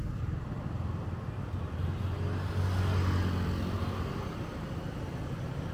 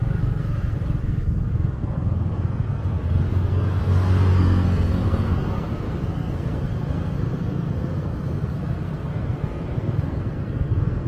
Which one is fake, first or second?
second